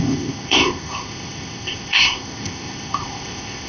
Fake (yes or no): yes